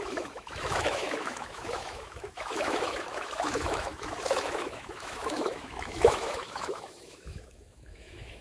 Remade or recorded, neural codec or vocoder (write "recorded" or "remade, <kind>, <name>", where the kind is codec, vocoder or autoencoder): remade, autoencoder, DAC-VAE